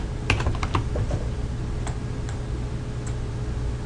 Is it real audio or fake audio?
real